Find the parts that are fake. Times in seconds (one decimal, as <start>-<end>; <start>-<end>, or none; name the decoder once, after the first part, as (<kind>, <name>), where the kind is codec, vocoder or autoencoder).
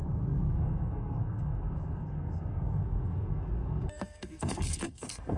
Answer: 0.0-5.4 (codec, SNAC)